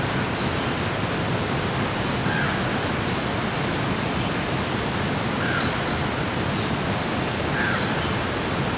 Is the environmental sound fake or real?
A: real